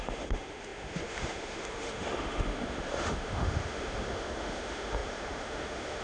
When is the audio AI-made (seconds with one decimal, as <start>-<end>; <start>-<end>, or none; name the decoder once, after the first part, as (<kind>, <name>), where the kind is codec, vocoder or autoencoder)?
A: 0.0-6.0 (autoencoder, DAC-VAE)